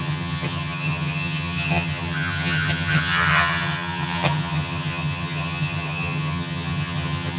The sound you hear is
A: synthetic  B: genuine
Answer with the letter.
A